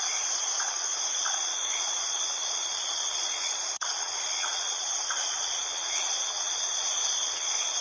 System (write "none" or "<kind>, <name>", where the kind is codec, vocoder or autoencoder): vocoder, Vocos